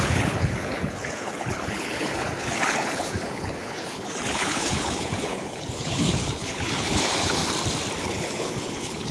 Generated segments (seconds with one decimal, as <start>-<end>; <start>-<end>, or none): 0.0-7.4; 8.0-9.1